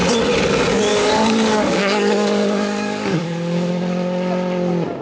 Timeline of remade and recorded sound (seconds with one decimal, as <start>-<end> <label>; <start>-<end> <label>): 0.0-0.9 recorded; 0.9-3.7 remade; 3.7-5.0 recorded